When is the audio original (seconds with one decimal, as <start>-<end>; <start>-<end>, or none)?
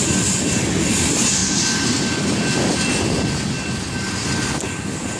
0.0-5.2